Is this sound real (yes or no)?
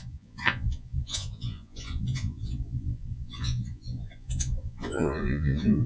no